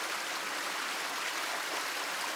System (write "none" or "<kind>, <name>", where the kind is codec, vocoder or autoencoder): none